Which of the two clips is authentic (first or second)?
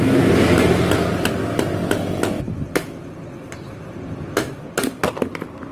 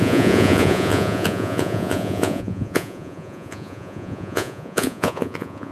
first